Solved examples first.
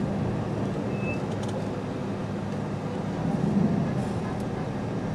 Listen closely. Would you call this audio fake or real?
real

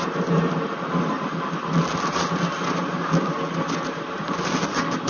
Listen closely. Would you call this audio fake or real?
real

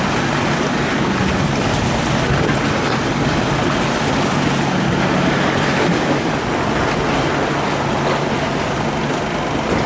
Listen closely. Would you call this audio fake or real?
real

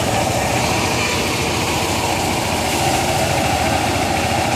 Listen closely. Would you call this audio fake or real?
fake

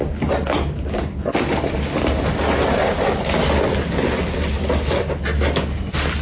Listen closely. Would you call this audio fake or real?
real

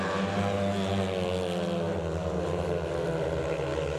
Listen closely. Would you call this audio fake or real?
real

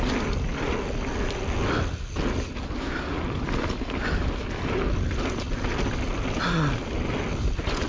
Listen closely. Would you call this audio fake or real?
real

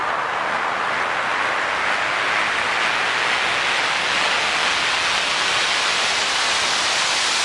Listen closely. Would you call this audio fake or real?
real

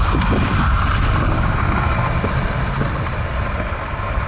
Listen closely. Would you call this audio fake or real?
real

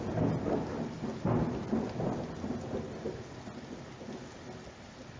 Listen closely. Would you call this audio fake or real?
real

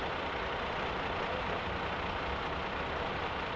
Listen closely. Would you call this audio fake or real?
fake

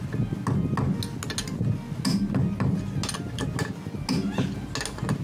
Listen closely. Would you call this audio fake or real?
real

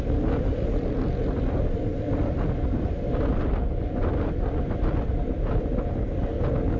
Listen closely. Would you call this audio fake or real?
real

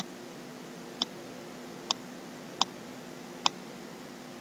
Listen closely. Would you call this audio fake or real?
real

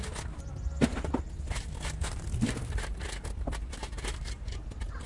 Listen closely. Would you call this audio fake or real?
real